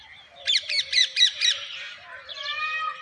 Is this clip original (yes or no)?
no